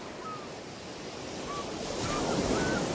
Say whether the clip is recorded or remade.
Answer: recorded